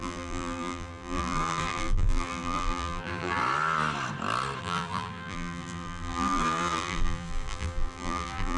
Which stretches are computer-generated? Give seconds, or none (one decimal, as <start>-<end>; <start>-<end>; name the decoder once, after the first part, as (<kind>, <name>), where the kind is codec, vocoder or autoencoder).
0.0-3.4 (vocoder, BigVGAN v2); 4.6-8.6